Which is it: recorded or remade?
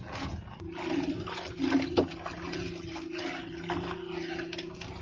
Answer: recorded